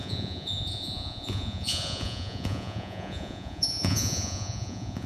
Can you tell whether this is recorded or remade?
remade